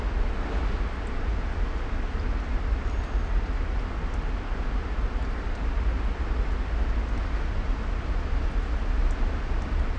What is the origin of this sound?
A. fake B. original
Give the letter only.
B